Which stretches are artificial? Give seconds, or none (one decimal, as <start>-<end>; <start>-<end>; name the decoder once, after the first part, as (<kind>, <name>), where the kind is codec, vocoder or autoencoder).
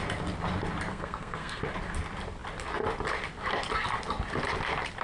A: 0.9-1.6 (codec, SNAC)